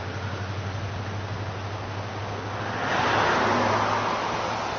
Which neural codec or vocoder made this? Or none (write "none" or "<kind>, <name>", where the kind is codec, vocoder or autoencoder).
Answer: none